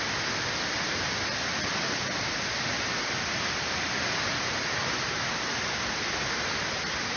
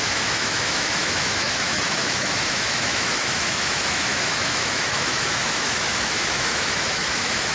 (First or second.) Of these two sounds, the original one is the first